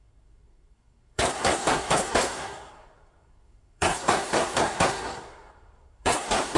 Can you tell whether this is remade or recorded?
remade